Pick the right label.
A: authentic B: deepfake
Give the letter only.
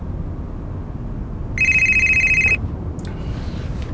A